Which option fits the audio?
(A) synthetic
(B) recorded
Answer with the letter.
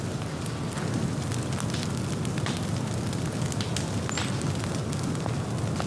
B